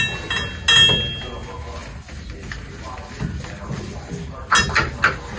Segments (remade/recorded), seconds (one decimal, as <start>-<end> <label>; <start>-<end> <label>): 0.0-5.4 recorded